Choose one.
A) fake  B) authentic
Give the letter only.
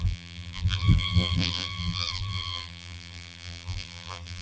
A